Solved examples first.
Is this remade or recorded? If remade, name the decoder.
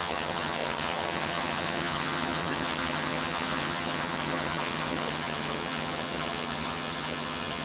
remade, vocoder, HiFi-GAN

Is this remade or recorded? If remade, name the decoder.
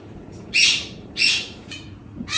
remade, vocoder, Vocos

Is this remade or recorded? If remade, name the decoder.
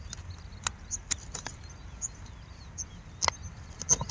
recorded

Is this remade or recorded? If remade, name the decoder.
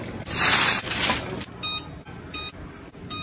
recorded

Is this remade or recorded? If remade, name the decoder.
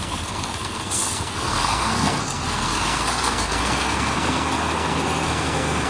remade, codec, SNAC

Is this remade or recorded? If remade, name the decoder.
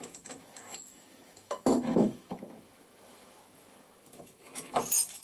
remade, autoencoder, DAC-VAE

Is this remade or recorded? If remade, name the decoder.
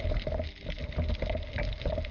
recorded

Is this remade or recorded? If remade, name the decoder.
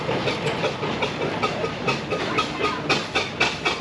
recorded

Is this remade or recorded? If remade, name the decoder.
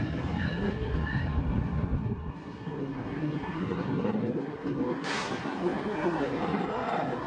remade, codec, SNAC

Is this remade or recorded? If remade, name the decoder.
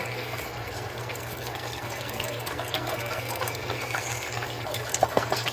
remade, codec, SNAC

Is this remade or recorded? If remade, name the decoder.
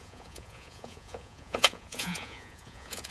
remade, vocoder, Vocos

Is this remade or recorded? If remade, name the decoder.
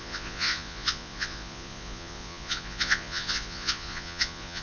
remade, vocoder, Vocos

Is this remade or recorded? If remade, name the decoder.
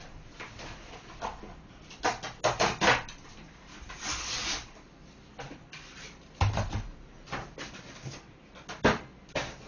recorded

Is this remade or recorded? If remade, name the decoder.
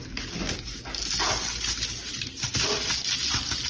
recorded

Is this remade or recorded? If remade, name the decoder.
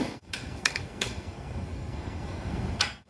remade, codec, SNAC